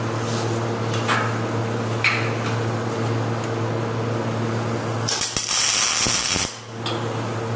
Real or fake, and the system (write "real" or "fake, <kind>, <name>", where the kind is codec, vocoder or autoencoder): real